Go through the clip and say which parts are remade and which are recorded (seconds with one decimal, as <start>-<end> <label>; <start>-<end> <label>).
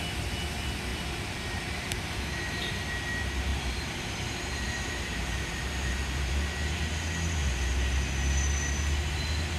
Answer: 0.0-0.9 recorded; 0.9-2.7 remade; 2.7-3.5 recorded; 3.5-6.3 remade; 6.3-9.6 recorded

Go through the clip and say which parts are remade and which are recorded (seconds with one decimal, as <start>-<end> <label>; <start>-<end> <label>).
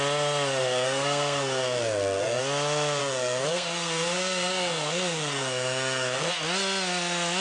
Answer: 0.0-0.6 recorded; 0.6-2.4 remade; 2.4-3.0 recorded; 3.0-6.3 remade; 6.3-7.4 recorded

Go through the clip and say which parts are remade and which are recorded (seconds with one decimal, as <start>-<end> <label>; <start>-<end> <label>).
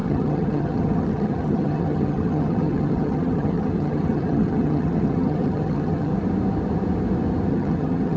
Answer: 0.0-6.1 remade; 6.1-7.5 recorded; 7.5-8.2 remade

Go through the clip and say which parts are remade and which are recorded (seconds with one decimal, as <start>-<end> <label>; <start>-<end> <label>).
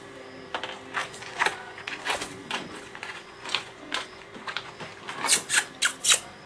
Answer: 0.0-1.0 recorded; 1.0-4.9 remade; 4.9-6.5 recorded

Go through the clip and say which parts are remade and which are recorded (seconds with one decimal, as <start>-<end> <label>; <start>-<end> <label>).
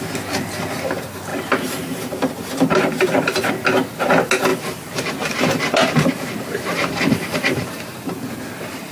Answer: 0.0-1.3 recorded; 1.3-3.5 remade; 3.5-4.5 recorded; 4.5-7.0 remade; 7.0-8.9 recorded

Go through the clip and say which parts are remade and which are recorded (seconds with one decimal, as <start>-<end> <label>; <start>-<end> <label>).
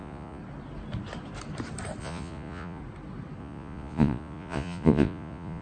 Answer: 0.0-0.4 remade; 0.4-2.0 recorded; 2.0-2.8 remade; 2.8-3.4 recorded; 3.4-5.6 remade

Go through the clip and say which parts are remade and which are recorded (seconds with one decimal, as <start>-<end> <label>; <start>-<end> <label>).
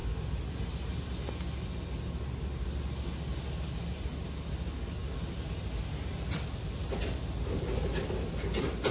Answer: 0.0-8.9 recorded